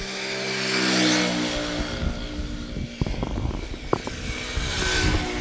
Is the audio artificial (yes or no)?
no